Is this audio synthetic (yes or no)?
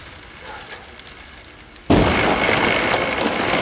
no